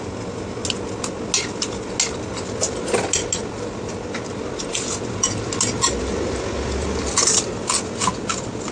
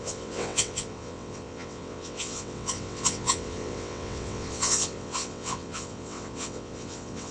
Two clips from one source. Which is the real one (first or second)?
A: first